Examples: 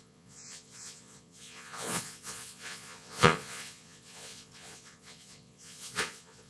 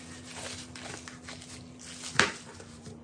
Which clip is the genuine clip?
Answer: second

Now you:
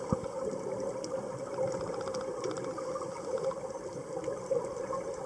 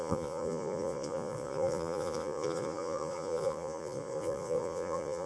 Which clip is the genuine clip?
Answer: first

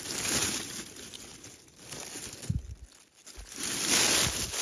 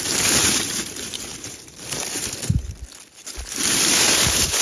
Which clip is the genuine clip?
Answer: first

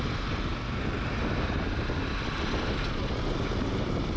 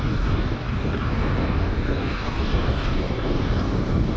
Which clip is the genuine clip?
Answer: first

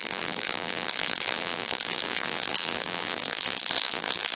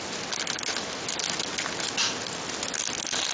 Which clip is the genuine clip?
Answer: second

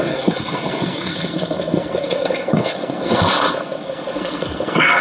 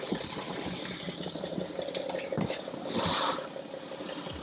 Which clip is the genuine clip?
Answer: second